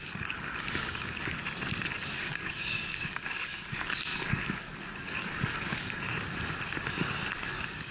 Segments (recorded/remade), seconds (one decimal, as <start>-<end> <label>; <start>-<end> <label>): 0.0-1.4 remade; 1.4-2.1 recorded; 2.1-6.1 remade; 6.1-7.4 recorded; 7.4-7.9 remade